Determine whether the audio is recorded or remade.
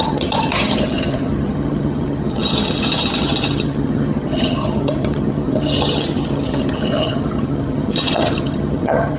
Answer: remade